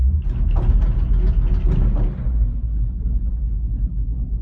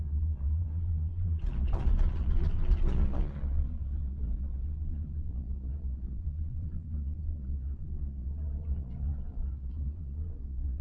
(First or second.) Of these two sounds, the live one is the first